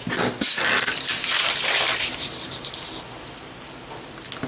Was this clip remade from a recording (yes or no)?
no